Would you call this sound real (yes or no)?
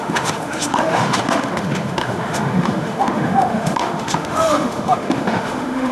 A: no